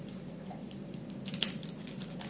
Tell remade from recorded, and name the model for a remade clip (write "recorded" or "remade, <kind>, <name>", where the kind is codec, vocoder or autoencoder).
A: remade, vocoder, BigVGAN v2